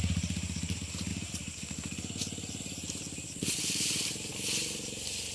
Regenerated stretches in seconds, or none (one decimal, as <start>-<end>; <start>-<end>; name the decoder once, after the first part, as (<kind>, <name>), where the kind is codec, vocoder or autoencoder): none